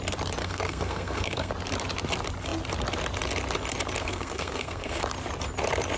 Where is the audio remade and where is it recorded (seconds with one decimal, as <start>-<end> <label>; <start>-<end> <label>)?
0.0-0.4 recorded; 0.4-1.5 remade; 1.5-4.0 recorded; 4.0-5.0 remade; 5.0-6.0 recorded